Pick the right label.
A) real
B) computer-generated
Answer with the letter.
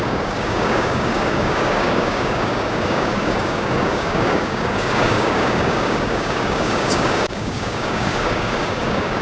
B